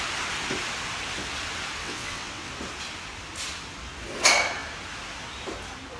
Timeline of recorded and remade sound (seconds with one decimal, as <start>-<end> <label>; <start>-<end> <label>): 0.0-1.8 recorded; 1.8-2.5 remade; 2.5-6.0 recorded